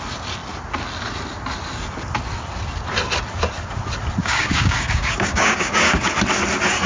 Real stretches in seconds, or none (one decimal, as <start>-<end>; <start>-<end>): 0.0-4.2; 6.1-6.9